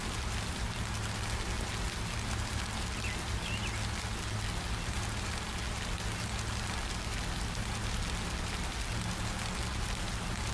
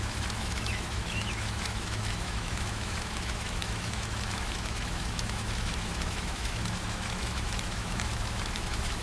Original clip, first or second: first